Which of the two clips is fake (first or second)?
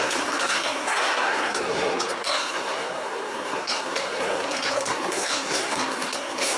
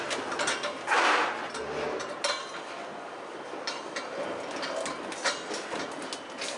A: first